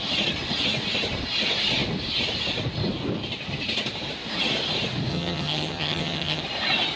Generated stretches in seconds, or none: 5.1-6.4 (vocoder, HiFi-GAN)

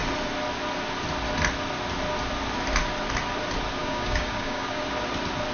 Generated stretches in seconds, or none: 3.8-4.8 (codec, DAC)

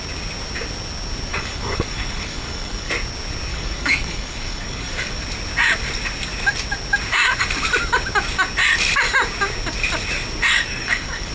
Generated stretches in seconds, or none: 1.3-2.9 (codec, DAC); 3.5-5.2; 10.5-11.3

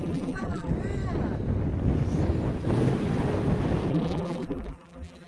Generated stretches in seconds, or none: 0.0-0.7 (vocoder, BigVGAN v2); 3.9-5.3

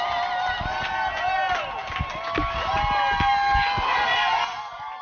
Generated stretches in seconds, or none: none

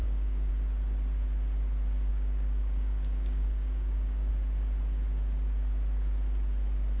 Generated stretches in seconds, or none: 0.0-0.5 (codec, DAC); 2.1-4.3

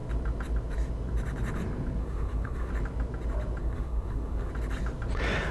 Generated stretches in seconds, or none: 2.0-2.7 (codec, SNAC); 3.6-4.5